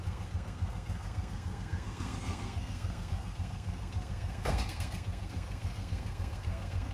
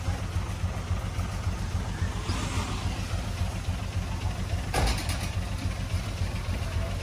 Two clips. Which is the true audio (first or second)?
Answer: second